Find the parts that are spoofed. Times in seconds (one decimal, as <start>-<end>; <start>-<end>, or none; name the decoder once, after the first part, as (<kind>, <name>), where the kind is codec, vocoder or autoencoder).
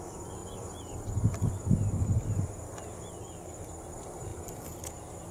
0.0-0.4 (vocoder, BigVGAN v2); 3.6-5.3